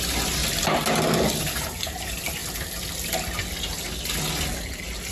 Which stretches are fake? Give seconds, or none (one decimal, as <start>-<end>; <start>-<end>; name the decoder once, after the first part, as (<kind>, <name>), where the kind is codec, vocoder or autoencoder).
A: 0.0-0.4 (vocoder, BigVGAN v2); 1.4-2.4